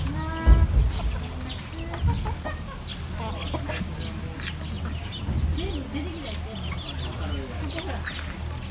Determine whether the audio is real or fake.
real